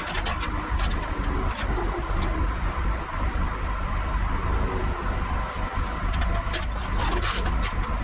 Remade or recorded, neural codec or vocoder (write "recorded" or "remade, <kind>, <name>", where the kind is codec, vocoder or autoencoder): recorded